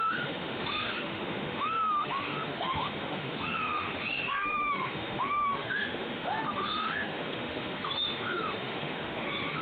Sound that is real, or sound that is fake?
fake